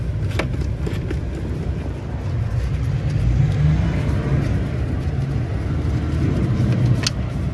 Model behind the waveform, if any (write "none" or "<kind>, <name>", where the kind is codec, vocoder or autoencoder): none